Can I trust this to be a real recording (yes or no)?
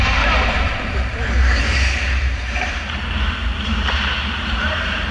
no